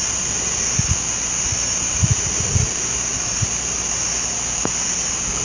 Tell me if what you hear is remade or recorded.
recorded